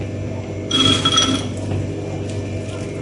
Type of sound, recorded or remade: recorded